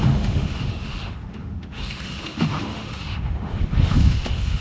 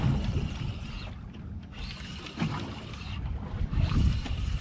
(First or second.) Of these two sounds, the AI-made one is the first